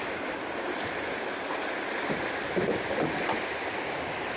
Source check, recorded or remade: recorded